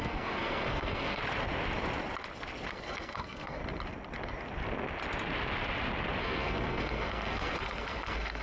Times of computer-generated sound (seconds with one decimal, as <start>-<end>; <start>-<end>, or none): 0.0-1.2; 2.7-3.6; 6.2-8.4